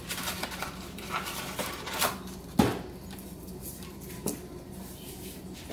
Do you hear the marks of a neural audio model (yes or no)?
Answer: no